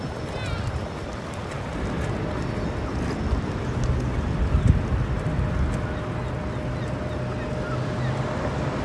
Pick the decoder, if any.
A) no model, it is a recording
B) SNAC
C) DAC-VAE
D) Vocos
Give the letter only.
A